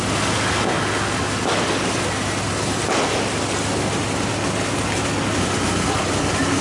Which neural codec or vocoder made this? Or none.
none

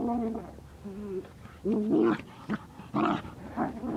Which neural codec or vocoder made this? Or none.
none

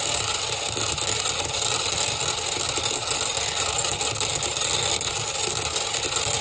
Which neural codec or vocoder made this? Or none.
none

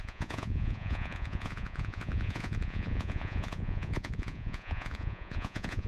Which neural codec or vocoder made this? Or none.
vocoder, Vocos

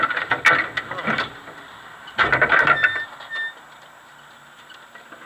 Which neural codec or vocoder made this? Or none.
none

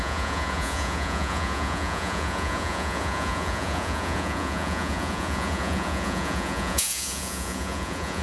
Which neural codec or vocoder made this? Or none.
vocoder, Vocos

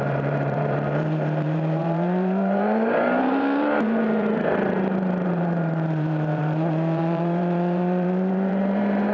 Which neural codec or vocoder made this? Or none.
vocoder, BigVGAN v2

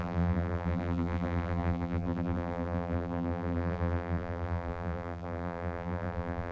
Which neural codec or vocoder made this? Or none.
vocoder, BigVGAN v2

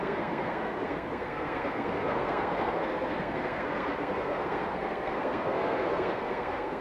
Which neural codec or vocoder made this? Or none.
codec, SNAC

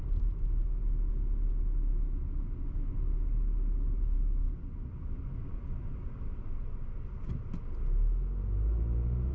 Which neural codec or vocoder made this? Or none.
none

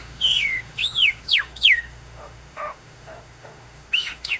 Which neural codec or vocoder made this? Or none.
autoencoder, DAC-VAE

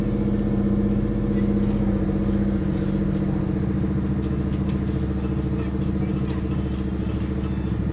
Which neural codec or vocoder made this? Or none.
none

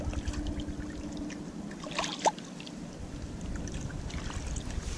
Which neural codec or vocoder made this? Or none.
none